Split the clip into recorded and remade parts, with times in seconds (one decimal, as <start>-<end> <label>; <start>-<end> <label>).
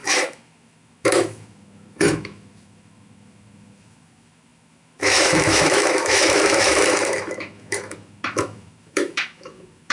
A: 0.0-9.9 remade